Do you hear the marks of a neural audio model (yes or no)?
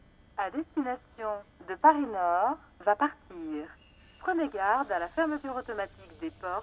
no